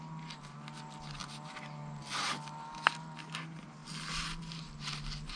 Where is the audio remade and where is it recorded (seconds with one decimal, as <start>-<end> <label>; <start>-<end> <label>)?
0.0-5.4 recorded